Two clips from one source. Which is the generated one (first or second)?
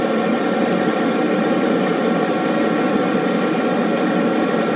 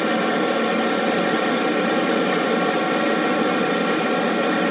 first